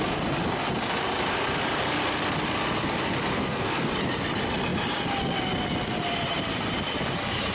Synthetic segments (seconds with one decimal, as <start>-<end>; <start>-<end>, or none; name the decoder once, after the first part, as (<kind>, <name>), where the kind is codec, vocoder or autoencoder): 3.3-3.9 (codec, SNAC)